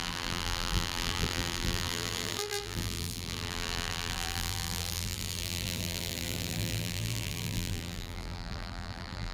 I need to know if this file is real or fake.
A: fake